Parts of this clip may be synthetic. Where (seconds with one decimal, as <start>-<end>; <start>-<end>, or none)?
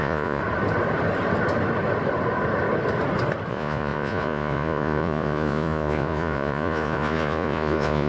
0.0-0.4; 3.5-8.1